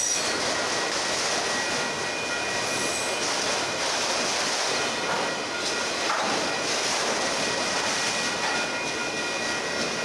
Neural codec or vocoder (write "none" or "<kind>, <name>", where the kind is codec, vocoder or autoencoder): none